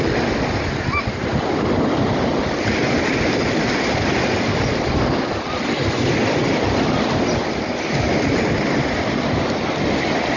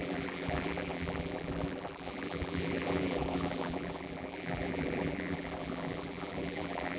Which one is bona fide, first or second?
first